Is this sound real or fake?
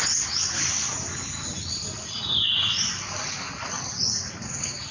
real